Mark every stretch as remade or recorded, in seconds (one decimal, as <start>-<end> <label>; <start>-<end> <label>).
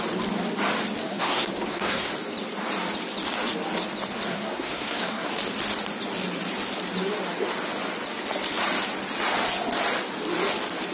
0.0-1.1 recorded; 1.1-2.1 remade; 2.1-4.3 recorded; 4.3-5.3 remade; 5.3-10.9 recorded